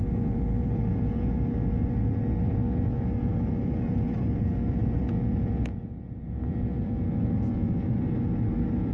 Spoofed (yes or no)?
yes